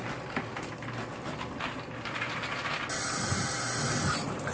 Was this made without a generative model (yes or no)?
yes